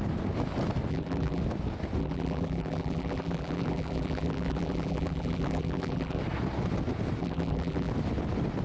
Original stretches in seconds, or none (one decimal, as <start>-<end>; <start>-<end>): 0.0-0.9; 1.4-2.0; 6.2-7.2; 7.9-8.6